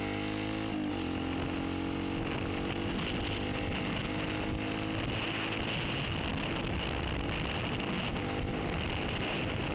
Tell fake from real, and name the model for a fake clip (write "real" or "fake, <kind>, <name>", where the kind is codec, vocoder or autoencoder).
real